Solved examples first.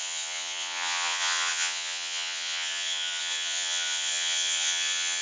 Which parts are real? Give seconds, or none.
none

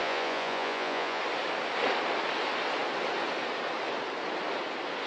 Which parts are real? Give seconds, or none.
1.2-5.1

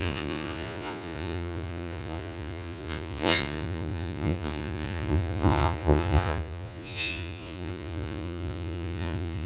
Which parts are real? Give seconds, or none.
none